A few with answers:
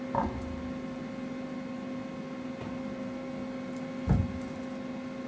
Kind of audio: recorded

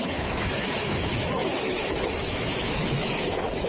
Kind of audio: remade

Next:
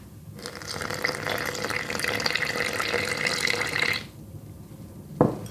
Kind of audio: recorded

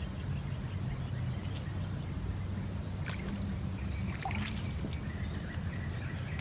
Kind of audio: recorded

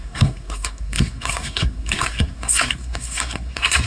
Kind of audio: remade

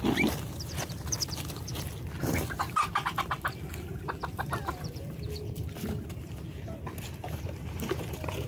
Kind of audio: remade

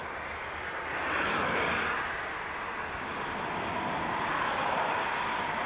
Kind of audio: recorded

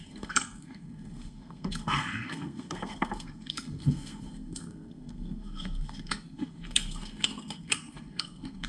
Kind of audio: remade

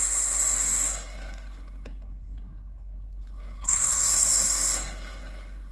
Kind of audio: remade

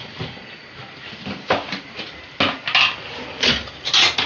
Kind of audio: recorded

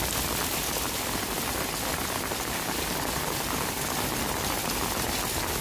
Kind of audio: recorded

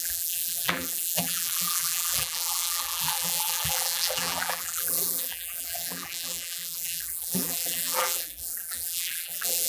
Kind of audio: remade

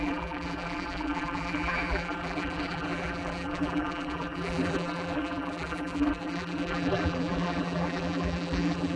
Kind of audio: remade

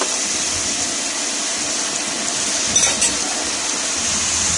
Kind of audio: recorded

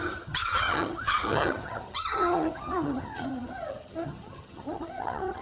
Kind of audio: remade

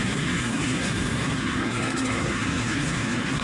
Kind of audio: remade